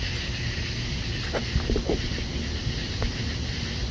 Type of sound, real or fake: real